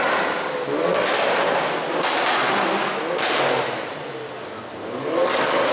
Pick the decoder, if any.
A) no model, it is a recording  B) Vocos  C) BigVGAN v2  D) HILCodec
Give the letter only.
A